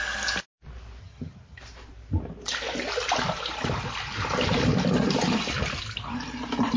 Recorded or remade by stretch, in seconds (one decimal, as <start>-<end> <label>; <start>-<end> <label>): 0.0-1.0 recorded; 1.0-1.6 remade; 1.6-6.8 recorded